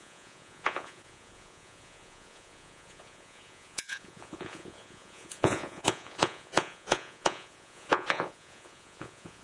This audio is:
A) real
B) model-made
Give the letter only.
B